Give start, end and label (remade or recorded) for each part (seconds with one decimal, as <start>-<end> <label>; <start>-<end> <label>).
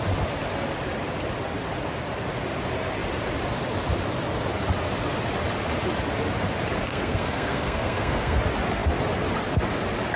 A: 0.0-6.9 recorded; 6.9-8.4 remade; 8.4-10.2 recorded